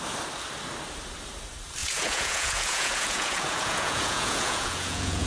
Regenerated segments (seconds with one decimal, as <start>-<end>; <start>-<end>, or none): 1.8-5.3